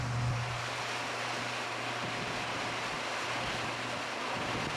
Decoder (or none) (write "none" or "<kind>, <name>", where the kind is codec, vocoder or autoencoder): none